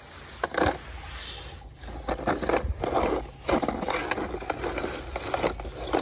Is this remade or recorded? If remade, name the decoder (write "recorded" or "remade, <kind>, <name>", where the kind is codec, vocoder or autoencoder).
recorded